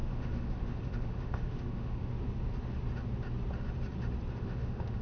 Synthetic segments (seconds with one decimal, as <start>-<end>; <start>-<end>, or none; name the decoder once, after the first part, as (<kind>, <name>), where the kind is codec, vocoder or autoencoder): 0.0-2.1 (autoencoder, DAC-VAE); 4.4-5.0